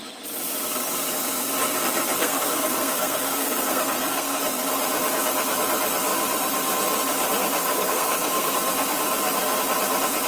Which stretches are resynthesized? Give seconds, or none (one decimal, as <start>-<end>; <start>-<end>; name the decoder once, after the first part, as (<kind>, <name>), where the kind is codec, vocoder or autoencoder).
2.2-4.4 (codec, SNAC); 7.6-8.5